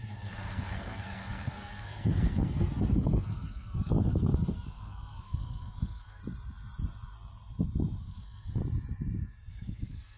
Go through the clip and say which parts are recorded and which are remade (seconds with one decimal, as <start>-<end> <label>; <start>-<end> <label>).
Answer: 0.0-6.2 remade; 6.2-8.0 recorded; 8.0-8.6 remade; 8.6-9.5 recorded; 9.5-10.2 remade